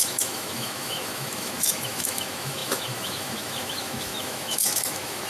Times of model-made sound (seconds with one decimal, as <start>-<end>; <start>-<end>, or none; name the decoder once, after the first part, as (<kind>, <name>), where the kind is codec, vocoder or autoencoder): 0.0-5.3 (autoencoder, DAC-VAE)